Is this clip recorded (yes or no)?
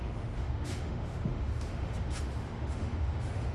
no